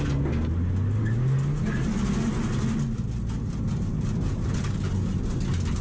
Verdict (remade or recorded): recorded